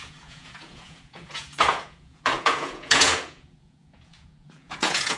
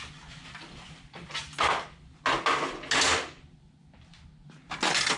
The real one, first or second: second